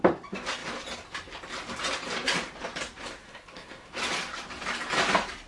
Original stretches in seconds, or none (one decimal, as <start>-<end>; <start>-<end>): 0.0-3.2; 3.9-5.5